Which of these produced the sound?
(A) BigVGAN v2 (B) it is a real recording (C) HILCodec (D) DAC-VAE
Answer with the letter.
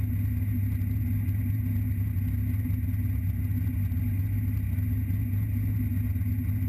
B